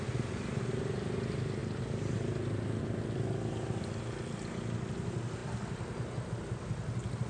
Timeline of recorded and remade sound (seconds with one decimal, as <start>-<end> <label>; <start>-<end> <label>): 0.0-7.3 recorded